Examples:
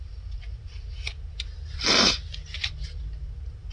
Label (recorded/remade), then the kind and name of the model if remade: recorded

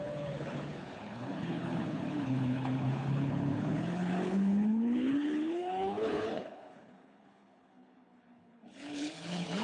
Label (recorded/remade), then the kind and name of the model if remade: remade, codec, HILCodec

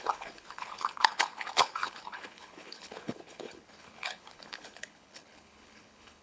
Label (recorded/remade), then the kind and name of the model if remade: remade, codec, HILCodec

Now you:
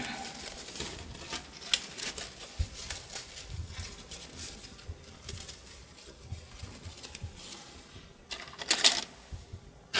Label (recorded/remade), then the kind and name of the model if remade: recorded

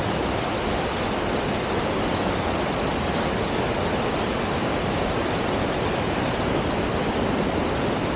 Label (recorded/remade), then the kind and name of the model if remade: recorded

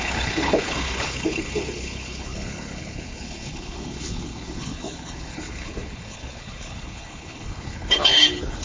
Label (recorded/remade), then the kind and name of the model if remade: remade, codec, HILCodec